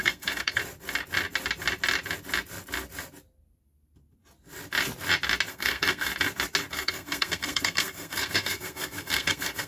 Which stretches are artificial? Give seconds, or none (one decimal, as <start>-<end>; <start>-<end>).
0.0-0.6; 5.5-6.1; 6.7-9.7